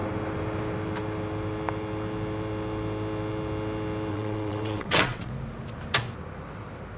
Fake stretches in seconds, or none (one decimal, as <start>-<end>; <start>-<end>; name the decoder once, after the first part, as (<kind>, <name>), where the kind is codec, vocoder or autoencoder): 4.1-5.3 (vocoder, WaveNeXt)